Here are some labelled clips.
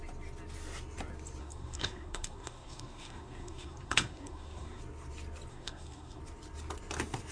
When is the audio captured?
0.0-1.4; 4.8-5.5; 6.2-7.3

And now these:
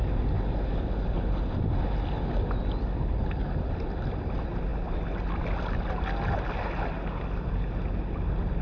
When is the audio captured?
0.0-8.6

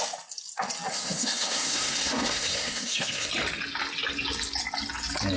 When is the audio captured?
0.0-0.9; 3.3-5.4